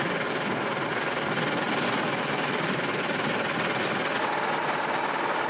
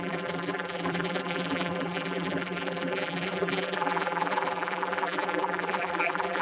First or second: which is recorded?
first